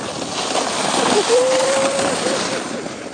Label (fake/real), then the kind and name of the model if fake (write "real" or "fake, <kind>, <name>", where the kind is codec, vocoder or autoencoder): fake, vocoder, BigVGAN v2